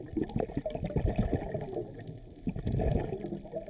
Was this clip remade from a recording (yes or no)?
no